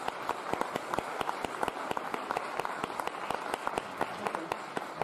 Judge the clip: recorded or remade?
recorded